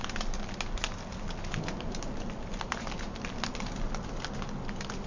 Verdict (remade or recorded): recorded